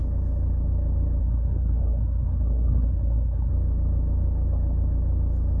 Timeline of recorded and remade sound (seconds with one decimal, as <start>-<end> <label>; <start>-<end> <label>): 0.0-1.2 recorded; 1.2-3.5 remade; 3.5-5.6 recorded